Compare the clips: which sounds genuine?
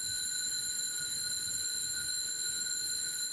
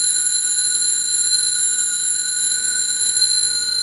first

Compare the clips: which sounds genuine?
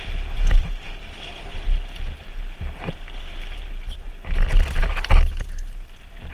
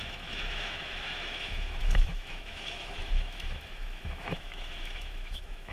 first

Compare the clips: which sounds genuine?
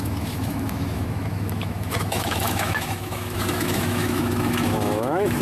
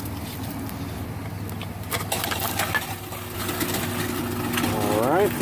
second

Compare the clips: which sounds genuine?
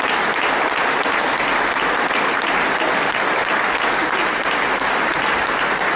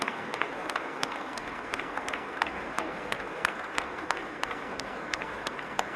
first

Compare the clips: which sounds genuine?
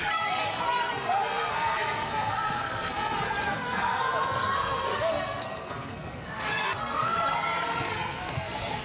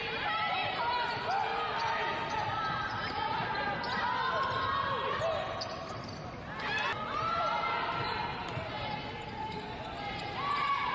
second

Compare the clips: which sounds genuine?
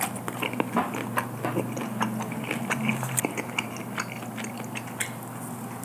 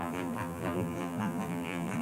first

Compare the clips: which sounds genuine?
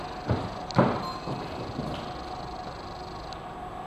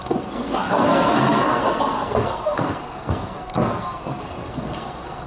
first